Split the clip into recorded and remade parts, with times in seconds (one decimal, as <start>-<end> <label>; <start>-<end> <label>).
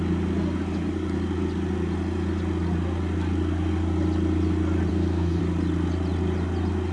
0.0-4.9 recorded; 4.9-5.4 remade; 5.4-6.9 recorded